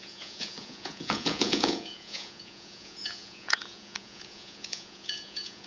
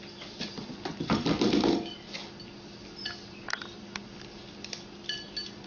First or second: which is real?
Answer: second